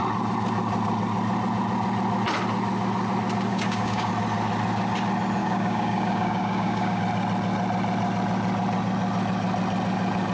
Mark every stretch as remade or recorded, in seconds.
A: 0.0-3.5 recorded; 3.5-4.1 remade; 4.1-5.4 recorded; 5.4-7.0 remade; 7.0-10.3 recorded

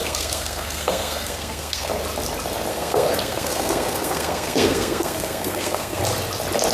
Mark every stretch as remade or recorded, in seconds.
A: 0.0-1.9 remade; 1.9-2.7 recorded; 2.7-6.0 remade; 6.0-6.7 recorded

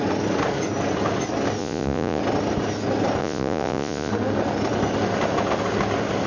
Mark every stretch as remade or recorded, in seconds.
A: 0.0-1.6 recorded; 1.6-2.2 remade; 2.2-3.2 recorded; 3.2-4.1 remade; 4.1-6.3 recorded